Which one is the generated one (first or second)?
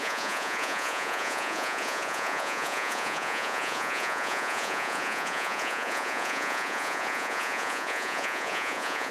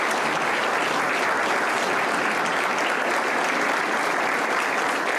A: first